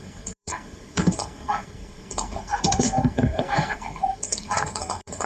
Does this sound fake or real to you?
fake